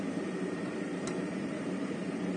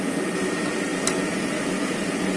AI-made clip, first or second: first